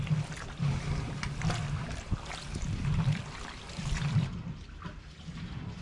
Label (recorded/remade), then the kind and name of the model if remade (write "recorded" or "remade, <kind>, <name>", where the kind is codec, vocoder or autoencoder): remade, vocoder, BigVGAN v2